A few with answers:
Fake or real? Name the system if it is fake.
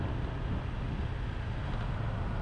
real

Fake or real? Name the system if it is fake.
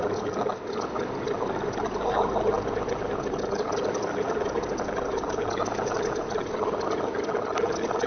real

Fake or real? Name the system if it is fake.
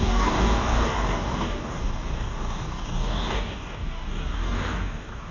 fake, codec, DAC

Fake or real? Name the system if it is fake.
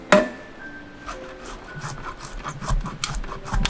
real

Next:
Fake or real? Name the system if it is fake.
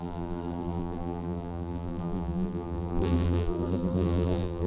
fake, vocoder, BigVGAN v2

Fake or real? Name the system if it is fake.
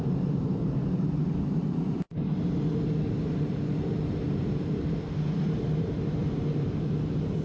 fake, vocoder, BigVGAN v2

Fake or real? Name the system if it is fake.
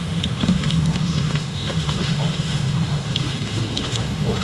fake, autoencoder, DAC-VAE